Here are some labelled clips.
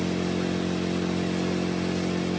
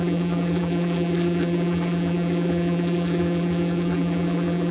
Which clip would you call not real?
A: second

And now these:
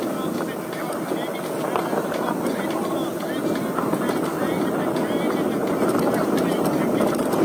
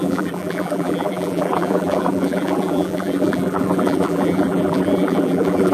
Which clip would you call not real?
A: second